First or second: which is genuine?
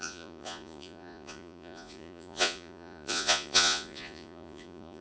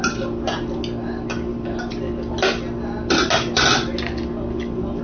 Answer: second